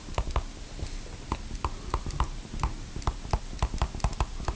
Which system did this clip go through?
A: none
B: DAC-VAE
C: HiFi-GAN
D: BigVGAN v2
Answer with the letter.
A